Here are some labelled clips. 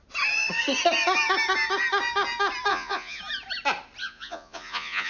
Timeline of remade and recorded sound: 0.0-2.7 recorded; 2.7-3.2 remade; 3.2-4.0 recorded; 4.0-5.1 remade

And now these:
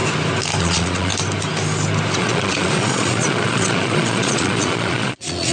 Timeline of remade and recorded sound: 0.0-0.6 recorded; 0.6-1.1 remade; 1.1-2.2 recorded; 2.2-5.5 remade